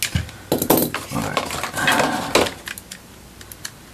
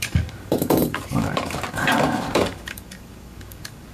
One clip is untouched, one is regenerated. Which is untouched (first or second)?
first